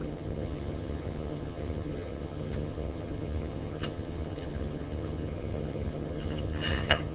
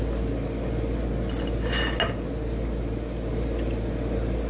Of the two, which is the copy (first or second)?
first